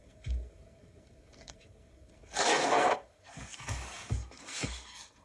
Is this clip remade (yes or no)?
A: yes